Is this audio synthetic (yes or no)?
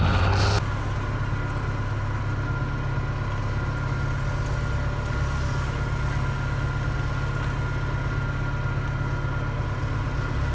no